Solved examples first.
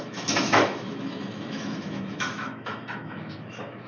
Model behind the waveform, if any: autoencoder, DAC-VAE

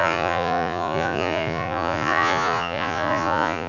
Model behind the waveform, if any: vocoder, Vocos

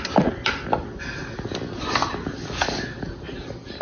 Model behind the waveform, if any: none